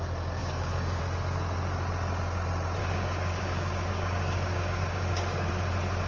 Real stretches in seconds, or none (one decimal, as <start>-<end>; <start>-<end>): 0.0-0.4; 1.0-2.8; 5.5-6.1